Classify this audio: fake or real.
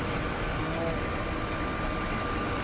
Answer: real